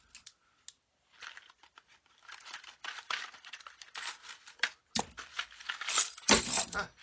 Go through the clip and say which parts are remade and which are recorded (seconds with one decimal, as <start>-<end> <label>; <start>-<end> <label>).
0.0-7.0 recorded